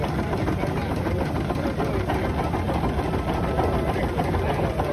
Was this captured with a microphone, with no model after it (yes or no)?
yes